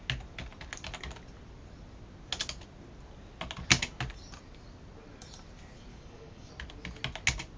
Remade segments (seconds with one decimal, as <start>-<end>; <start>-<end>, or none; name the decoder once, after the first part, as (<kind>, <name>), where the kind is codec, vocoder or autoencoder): 5.9-6.5 (codec, DAC)